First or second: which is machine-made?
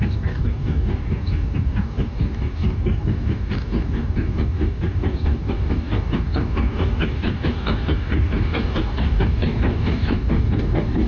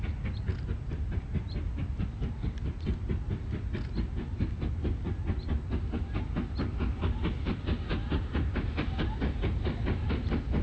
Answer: first